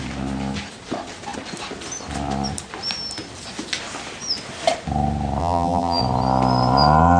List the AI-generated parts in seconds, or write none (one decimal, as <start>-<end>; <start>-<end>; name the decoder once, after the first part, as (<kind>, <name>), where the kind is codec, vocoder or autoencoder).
5.4-6.0 (vocoder, BigVGAN v2)